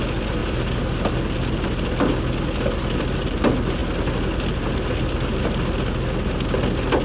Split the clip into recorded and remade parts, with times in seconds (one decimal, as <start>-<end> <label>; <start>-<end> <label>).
0.0-7.0 recorded